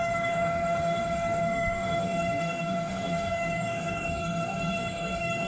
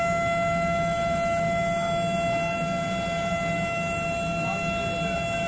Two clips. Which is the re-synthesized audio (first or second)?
first